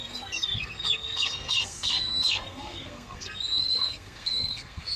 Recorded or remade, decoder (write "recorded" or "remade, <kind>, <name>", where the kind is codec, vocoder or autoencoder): remade, codec, SNAC